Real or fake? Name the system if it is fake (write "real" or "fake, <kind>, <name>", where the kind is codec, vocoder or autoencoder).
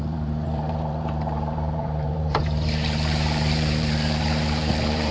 fake, vocoder, BigVGAN v2